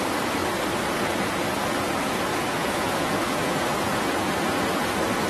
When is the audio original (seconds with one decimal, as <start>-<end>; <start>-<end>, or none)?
0.0-2.3; 4.0-5.3